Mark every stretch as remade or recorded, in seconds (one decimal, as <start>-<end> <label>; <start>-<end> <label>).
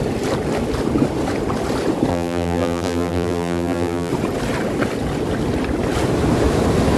0.0-2.1 recorded; 2.1-4.1 remade; 4.1-7.0 recorded